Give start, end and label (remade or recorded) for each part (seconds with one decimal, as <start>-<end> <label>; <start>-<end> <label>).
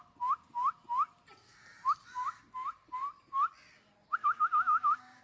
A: 0.0-4.2 recorded; 4.2-5.2 remade